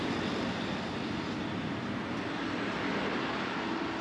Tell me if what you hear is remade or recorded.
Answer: recorded